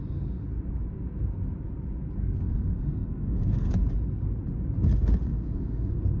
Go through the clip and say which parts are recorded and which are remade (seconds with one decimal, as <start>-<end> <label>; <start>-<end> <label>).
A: 0.0-2.2 recorded; 2.2-3.7 remade; 3.7-5.3 recorded; 5.3-6.2 remade